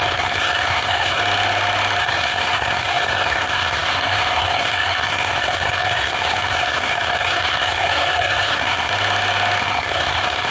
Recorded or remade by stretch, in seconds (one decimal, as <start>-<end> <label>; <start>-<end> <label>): 0.0-1.2 remade; 1.2-2.0 recorded; 2.0-8.9 remade; 8.9-9.6 recorded; 9.6-10.5 remade